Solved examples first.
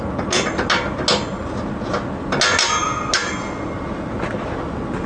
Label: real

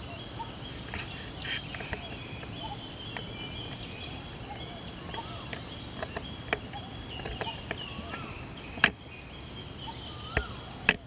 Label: fake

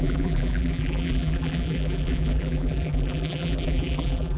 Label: fake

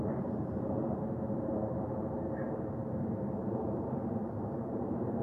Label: fake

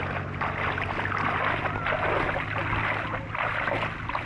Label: real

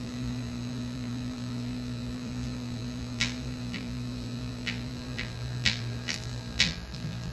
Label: fake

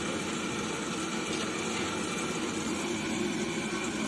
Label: real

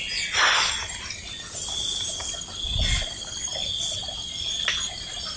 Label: real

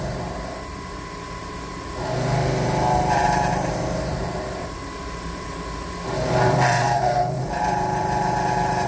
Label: fake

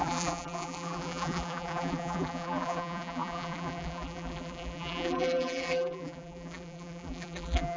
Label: fake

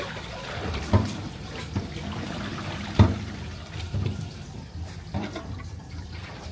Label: fake